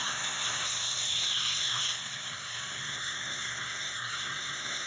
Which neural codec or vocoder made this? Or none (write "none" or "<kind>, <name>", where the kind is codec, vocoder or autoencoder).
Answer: codec, SNAC